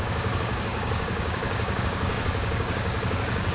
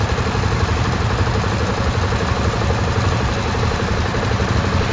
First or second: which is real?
second